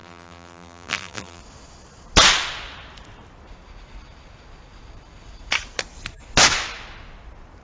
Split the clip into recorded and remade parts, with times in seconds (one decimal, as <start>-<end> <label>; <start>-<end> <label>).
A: 0.0-1.4 remade; 1.4-7.6 recorded